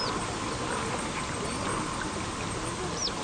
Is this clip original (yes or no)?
yes